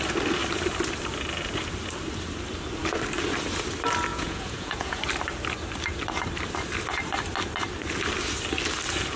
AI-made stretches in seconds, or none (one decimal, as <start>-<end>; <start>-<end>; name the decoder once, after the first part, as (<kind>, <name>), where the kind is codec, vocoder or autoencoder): 4.1-5.0 (vocoder, Vocos)